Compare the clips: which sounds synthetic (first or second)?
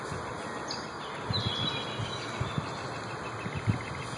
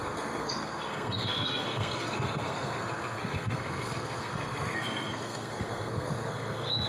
second